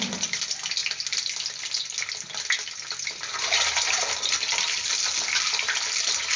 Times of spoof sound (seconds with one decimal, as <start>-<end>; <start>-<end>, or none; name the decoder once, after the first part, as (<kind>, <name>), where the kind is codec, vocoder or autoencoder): none